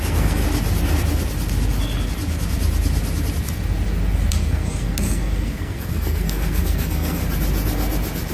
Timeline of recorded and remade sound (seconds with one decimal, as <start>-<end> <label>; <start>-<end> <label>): 0.0-0.4 remade; 0.4-4.3 recorded; 4.3-7.2 remade; 7.2-8.3 recorded